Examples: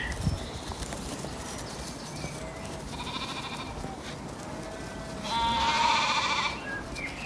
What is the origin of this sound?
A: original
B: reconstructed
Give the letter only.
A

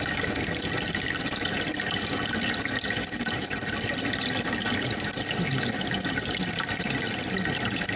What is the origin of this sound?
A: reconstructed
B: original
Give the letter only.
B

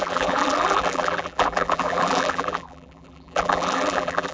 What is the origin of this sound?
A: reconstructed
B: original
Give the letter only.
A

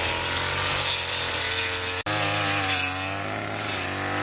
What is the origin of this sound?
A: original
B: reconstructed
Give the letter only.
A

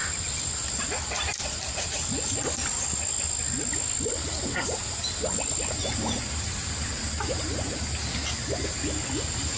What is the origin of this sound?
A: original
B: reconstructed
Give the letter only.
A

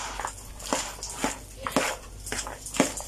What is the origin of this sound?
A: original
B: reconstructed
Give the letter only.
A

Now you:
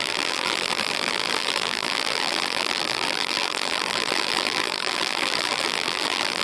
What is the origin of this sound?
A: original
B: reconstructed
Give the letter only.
B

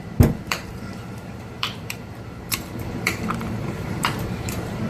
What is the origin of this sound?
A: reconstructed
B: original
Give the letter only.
A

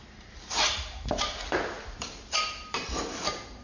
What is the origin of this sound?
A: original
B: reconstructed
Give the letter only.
B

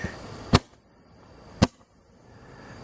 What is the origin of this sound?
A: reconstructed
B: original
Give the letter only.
B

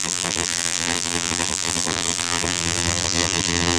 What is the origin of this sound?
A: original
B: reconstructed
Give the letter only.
B